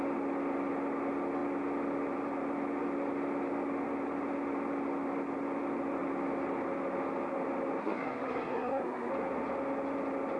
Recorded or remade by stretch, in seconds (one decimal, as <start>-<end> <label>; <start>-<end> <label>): 0.0-7.8 recorded; 7.8-9.1 remade; 9.1-10.4 recorded